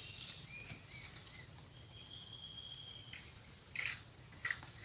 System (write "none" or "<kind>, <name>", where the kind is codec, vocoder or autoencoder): none